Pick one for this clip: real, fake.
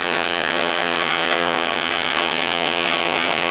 fake